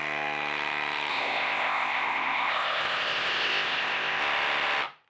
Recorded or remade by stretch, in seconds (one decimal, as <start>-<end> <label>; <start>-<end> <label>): 0.0-1.1 recorded; 1.1-4.2 remade; 4.2-5.1 recorded